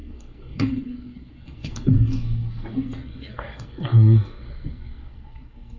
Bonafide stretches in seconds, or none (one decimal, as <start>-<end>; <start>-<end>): none